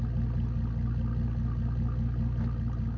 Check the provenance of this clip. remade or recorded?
recorded